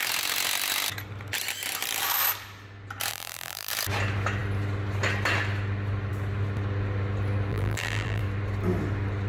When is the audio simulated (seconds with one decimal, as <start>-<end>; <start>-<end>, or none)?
3.1-3.7; 7.5-8.2